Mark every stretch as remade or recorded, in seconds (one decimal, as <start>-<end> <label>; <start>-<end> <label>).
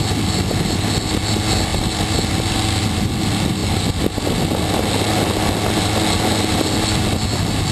0.0-7.7 recorded